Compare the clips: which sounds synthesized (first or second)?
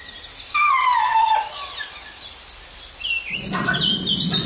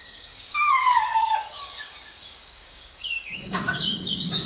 second